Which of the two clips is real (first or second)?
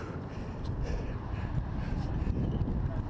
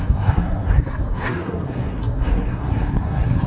first